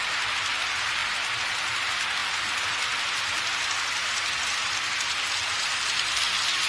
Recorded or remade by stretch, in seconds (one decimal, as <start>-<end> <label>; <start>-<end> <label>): 0.0-6.7 recorded